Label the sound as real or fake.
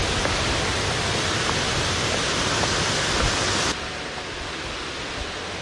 real